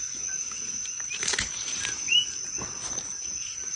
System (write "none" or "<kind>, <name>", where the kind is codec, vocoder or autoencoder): none